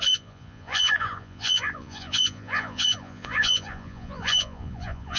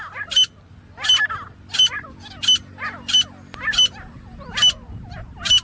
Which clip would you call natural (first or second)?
second